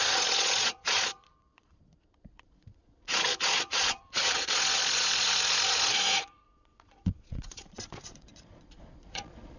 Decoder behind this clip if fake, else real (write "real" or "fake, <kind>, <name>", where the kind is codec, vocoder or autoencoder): fake, vocoder, Vocos